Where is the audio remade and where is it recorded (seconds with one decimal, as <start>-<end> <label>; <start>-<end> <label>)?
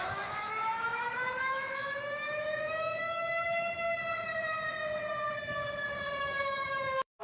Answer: 0.0-4.0 remade; 4.0-6.2 recorded; 6.2-7.2 remade